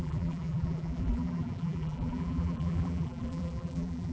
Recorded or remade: remade